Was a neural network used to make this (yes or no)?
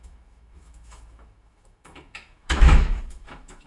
yes